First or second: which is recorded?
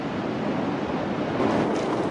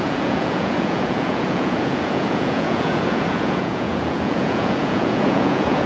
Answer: first